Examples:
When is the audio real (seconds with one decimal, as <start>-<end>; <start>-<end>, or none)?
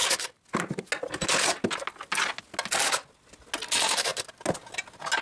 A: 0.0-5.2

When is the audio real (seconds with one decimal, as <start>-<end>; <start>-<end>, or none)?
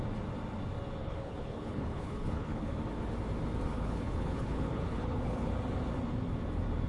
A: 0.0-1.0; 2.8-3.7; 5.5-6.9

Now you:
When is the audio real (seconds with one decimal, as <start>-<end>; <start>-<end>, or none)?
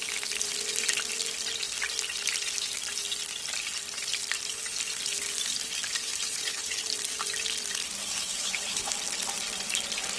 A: 0.0-6.0; 6.8-8.0; 8.9-10.2